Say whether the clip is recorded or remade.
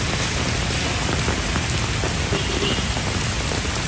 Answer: recorded